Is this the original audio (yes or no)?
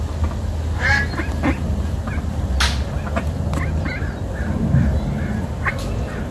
yes